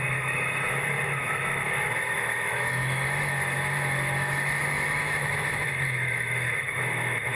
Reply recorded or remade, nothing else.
remade